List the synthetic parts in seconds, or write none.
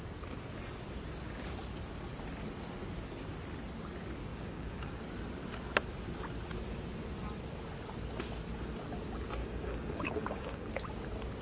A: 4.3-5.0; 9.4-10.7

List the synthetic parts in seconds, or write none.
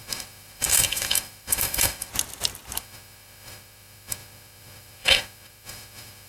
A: 0.0-2.1; 2.8-6.3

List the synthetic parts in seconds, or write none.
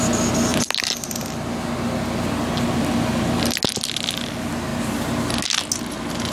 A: none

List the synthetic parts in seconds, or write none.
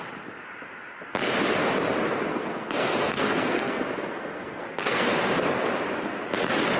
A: 2.3-5.1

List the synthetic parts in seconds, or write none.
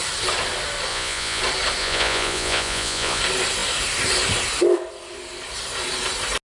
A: 0.9-1.4; 1.8-3.2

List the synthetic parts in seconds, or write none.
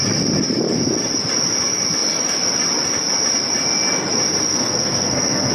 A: 4.5-5.5